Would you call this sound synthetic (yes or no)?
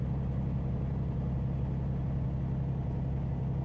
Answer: no